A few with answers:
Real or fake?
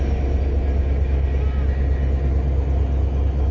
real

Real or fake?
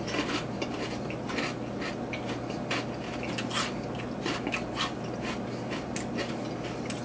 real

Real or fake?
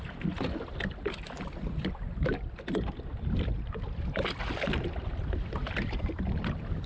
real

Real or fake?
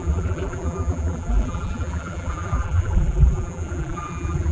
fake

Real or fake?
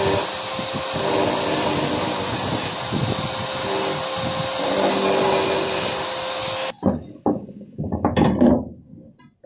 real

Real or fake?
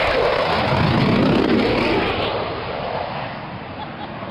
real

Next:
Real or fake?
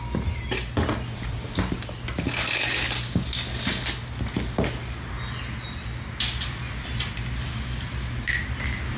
real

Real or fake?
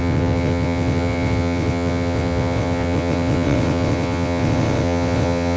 fake